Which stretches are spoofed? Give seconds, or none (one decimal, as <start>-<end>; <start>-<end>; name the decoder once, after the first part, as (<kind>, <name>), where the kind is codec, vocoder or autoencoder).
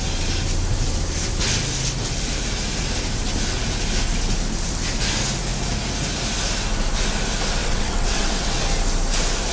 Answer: 7.6-8.6 (vocoder, WaveNeXt)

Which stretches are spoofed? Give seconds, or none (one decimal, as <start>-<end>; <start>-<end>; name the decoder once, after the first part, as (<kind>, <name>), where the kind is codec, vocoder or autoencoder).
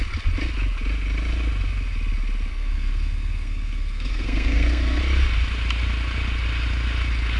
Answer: 2.5-5.0 (codec, SNAC)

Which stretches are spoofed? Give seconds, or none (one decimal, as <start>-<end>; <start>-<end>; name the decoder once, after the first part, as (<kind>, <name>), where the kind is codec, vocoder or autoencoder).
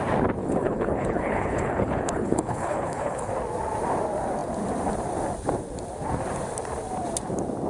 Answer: 0.4-3.3 (codec, HILCodec)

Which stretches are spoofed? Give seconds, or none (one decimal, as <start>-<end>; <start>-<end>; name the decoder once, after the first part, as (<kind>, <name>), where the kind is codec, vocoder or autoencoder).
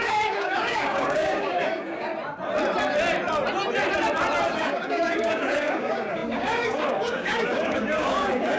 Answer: 0.0-2.1 (codec, DAC); 4.5-8.6